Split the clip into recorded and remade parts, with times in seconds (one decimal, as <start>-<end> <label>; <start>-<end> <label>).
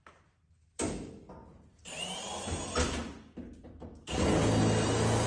0.0-5.3 recorded